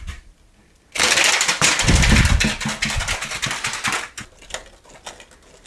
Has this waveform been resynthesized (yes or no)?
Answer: no